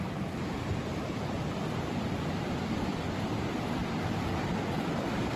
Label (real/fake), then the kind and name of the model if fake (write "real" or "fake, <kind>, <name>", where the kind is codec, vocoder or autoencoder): real